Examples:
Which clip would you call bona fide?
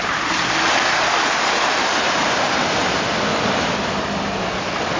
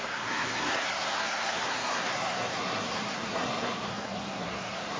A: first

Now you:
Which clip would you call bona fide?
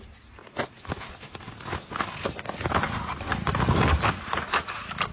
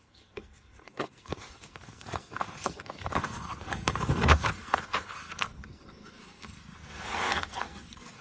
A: first